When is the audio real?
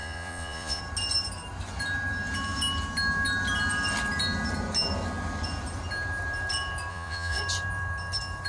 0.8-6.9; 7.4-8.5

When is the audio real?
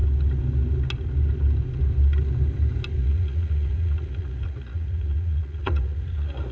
0.0-3.0